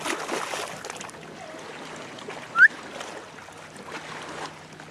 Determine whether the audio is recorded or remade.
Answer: recorded